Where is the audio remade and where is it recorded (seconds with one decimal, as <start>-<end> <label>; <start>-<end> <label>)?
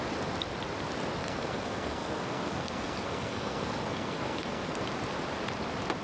0.0-1.2 recorded; 1.2-4.8 remade; 4.8-6.0 recorded